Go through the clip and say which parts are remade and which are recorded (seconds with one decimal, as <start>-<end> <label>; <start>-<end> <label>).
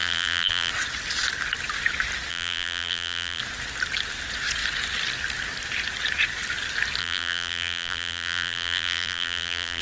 0.0-0.7 remade; 0.7-2.3 recorded; 2.3-3.4 remade; 3.4-7.0 recorded; 7.0-9.8 remade